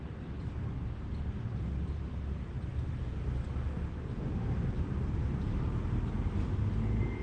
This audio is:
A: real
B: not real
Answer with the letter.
A